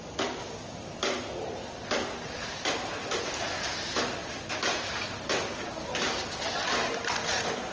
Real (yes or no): yes